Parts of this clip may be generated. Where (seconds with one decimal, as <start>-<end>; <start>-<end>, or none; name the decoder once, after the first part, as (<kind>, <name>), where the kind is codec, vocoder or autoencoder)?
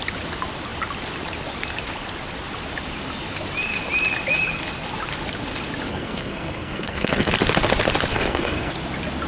5.9-7.3 (codec, SNAC); 8.1-8.7